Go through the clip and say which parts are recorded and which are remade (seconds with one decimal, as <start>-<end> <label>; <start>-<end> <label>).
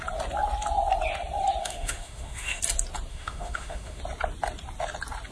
0.0-1.6 recorded; 1.6-2.6 remade; 2.6-3.1 recorded; 3.1-4.0 remade; 4.0-5.3 recorded